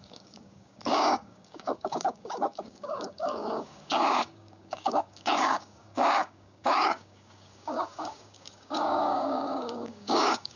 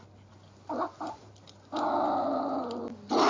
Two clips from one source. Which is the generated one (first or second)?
first